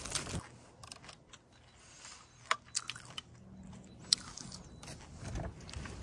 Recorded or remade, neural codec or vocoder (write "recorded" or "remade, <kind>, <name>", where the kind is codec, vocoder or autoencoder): recorded